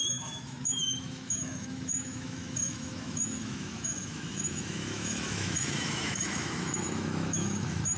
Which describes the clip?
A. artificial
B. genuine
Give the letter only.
A